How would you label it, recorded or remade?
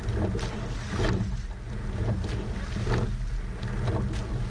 recorded